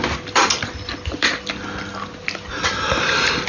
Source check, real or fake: real